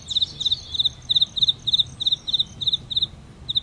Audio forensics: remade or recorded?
recorded